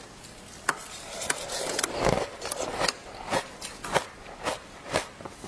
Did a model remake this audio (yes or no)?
no